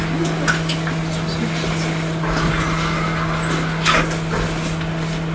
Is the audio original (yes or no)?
yes